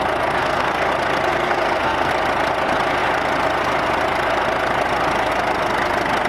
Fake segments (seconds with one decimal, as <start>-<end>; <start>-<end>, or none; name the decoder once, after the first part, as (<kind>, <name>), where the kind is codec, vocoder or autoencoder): 0.4-0.9 (codec, SNAC); 1.3-2.1